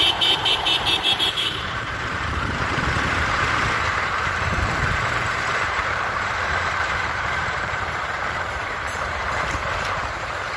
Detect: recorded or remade remade